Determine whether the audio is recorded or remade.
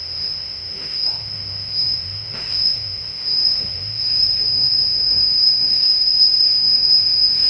remade